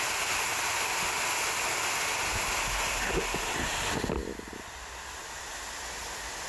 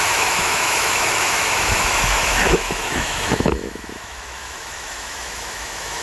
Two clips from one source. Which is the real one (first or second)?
first